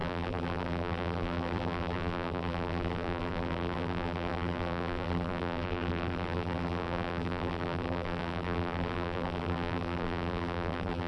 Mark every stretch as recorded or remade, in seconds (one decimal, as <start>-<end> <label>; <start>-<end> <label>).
0.0-11.1 remade